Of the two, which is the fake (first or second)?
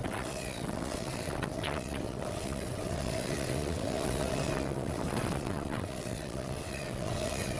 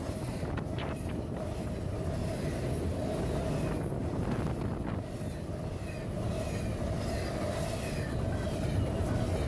first